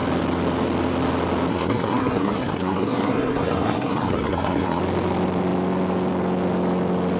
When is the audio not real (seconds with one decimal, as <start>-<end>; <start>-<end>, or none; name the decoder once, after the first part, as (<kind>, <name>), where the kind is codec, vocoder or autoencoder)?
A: 1.5-4.8 (codec, SNAC)